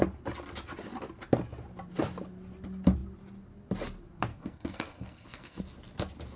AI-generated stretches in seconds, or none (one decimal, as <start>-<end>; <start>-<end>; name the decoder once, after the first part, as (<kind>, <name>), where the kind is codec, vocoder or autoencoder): 4.3-5.6 (codec, SNAC)